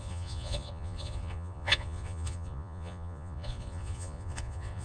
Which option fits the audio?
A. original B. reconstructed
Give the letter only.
B